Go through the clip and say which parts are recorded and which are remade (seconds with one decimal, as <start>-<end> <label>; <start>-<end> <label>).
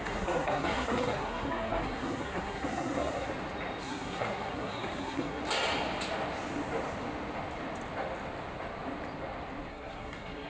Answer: 0.0-3.3 remade; 3.3-3.8 recorded; 3.8-5.4 remade; 5.4-9.7 recorded; 9.7-10.5 remade